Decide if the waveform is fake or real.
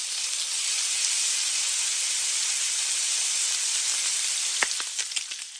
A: real